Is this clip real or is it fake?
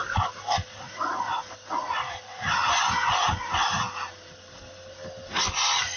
real